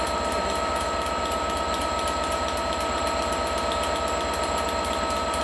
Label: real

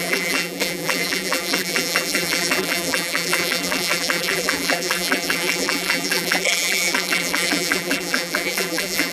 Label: fake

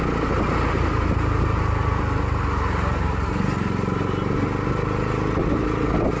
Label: real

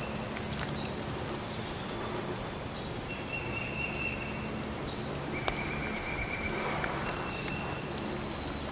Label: real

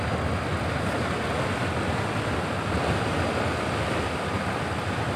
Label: real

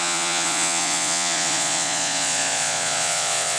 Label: fake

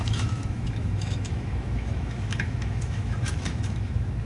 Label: fake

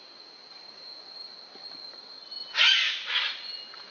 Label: real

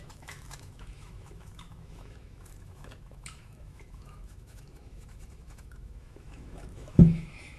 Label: fake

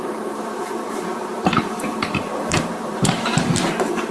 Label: fake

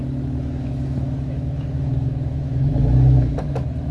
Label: fake